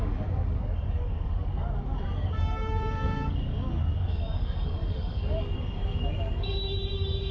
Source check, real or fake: fake